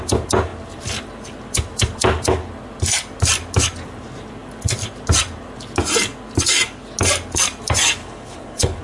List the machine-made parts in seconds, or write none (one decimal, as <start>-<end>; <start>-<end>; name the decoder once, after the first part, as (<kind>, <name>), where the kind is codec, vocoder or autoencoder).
8.0-8.8 (codec, HILCodec)